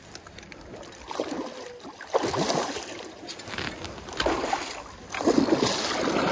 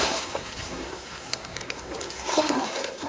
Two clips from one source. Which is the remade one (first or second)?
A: second